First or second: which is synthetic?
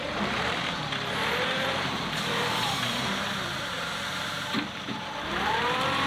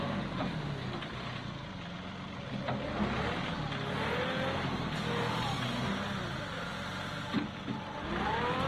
first